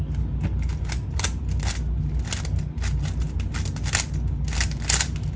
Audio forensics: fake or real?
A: real